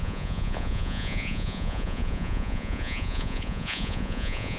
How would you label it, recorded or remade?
remade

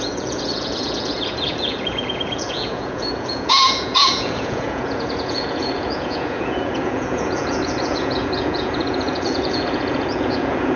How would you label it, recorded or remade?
remade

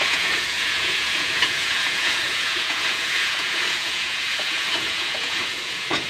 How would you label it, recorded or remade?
remade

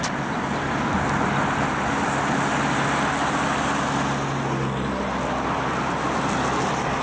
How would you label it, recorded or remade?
recorded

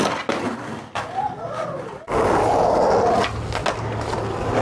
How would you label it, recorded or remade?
recorded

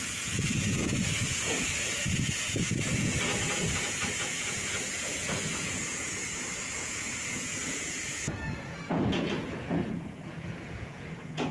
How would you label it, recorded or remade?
remade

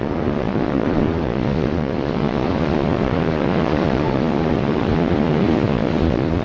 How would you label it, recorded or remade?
remade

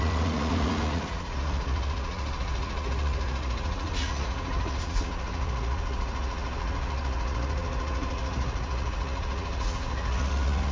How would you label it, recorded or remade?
remade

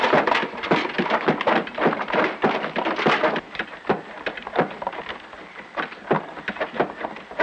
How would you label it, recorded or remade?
recorded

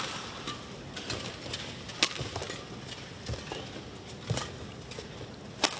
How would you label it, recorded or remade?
recorded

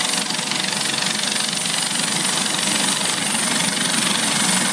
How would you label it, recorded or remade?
recorded